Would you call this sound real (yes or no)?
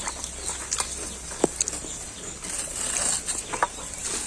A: yes